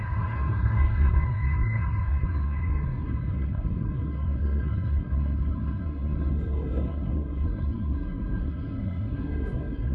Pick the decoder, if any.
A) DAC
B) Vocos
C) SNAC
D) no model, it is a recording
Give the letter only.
C